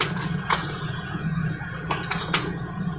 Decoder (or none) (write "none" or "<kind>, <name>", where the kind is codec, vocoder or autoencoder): vocoder, Vocos